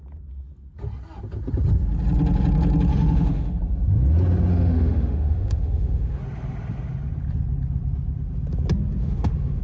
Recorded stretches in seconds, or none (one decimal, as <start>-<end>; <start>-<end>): 0.0-2.9; 3.6-4.5; 6.2-9.0